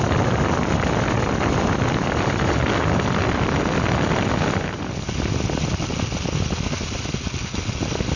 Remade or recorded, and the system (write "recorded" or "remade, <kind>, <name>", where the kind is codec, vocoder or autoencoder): recorded